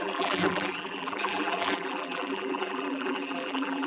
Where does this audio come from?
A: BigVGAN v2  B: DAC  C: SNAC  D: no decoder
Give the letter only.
A